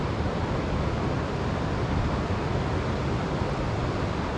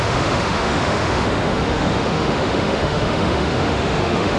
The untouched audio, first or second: first